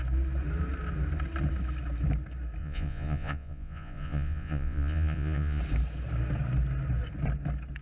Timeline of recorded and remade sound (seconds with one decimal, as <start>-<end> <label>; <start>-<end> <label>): 0.0-2.6 recorded; 2.6-5.6 remade; 5.6-7.8 recorded